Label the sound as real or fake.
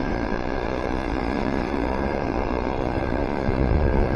fake